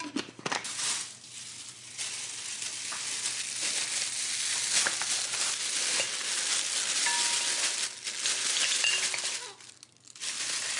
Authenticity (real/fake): real